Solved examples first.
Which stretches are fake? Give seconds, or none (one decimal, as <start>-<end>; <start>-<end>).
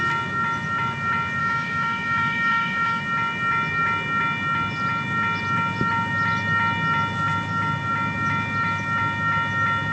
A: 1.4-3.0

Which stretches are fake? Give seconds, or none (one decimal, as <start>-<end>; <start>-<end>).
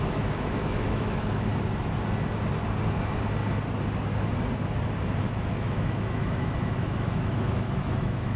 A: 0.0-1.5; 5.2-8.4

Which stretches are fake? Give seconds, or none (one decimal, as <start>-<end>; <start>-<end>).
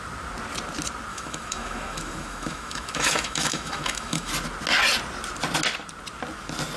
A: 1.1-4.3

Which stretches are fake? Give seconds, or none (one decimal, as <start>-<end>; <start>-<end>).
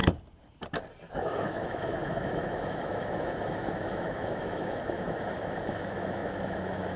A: 1.1-7.0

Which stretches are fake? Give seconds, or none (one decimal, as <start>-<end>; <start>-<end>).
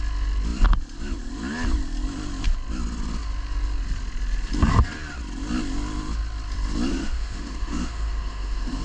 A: 6.9-8.8